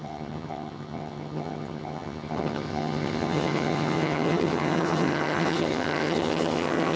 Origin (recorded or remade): remade